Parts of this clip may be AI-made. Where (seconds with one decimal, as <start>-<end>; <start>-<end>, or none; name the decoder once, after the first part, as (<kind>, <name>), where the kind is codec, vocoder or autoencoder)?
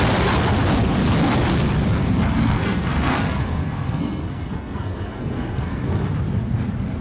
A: 2.0-6.1 (codec, SNAC)